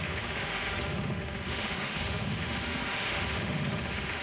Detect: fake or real fake